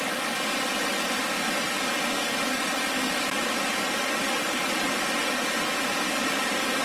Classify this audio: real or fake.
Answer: real